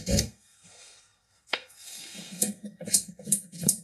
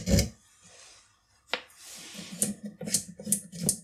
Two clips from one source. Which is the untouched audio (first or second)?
second